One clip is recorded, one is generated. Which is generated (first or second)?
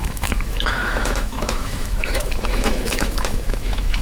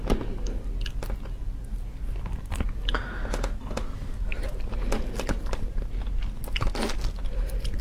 first